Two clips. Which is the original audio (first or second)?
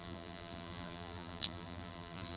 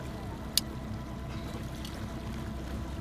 second